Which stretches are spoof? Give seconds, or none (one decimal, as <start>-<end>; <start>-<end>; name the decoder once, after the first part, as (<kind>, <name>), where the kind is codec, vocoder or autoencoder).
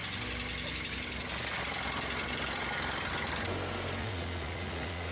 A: 4.0-5.1 (vocoder, Vocos)